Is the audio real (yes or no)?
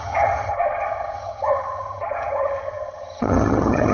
no